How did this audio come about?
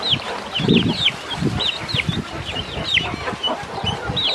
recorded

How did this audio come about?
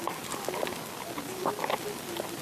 recorded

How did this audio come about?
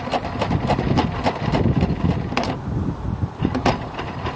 recorded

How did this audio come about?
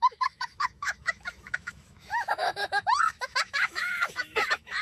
remade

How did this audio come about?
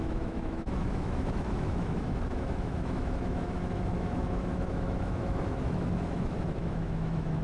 remade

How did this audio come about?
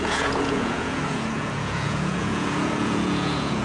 remade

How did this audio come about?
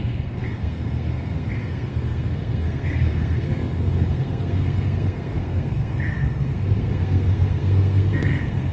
remade